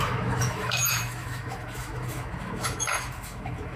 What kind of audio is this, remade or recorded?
remade